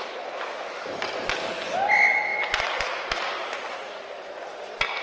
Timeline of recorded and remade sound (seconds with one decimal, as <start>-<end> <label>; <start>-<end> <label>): 0.0-5.0 recorded